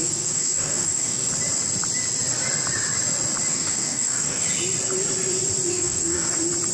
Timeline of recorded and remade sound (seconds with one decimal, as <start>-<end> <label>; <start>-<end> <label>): 0.0-1.3 remade; 1.3-3.5 recorded; 3.5-4.4 remade; 4.4-5.7 recorded; 5.7-6.3 remade; 6.3-6.7 recorded